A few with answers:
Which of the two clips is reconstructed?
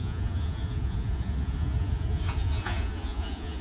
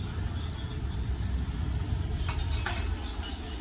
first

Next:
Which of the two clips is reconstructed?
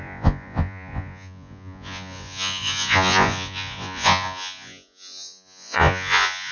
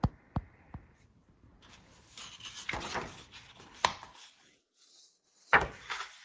first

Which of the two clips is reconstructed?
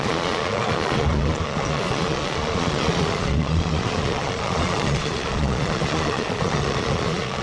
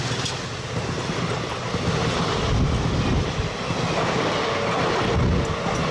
first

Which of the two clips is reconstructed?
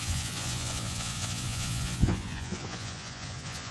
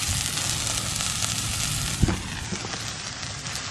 first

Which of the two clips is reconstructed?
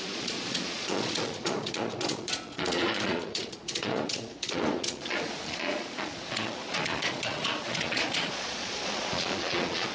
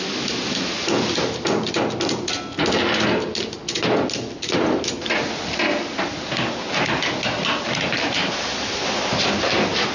first